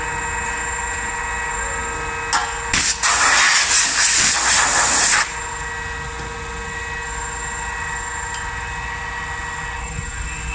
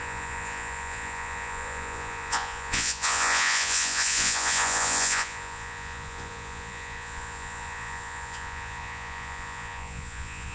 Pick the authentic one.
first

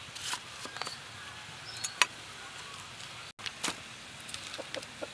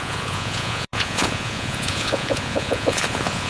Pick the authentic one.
first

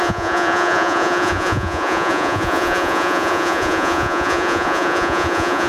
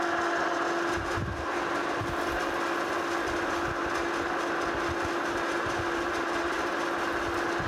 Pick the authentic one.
second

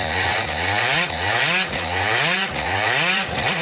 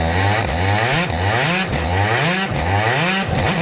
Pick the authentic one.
second